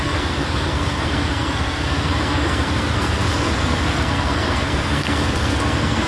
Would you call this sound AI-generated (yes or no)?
yes